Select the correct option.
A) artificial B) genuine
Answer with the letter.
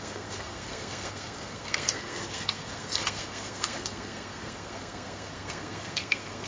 A